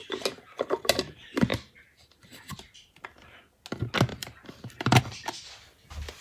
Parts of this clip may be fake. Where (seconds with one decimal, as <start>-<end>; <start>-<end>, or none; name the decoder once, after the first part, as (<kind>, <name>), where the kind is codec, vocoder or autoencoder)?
4.1-5.0 (vocoder, BigVGAN v2)